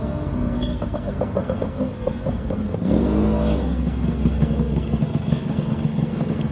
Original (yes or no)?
no